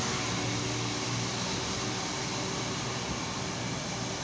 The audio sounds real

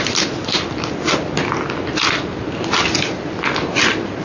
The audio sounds real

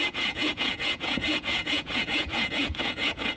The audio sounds fake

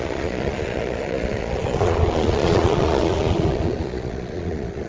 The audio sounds fake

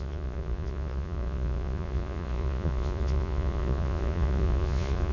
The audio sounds fake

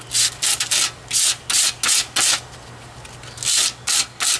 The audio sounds real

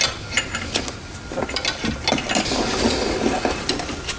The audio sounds real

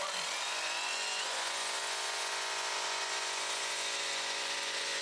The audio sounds fake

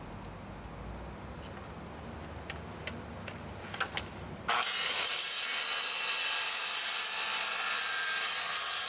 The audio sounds real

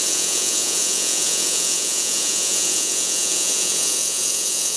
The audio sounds fake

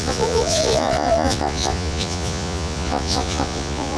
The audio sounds fake